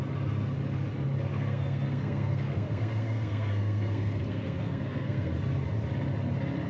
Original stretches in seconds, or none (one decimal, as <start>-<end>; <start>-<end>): 0.0-1.3; 5.3-6.7